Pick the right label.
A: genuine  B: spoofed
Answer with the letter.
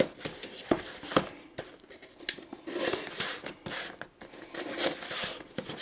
A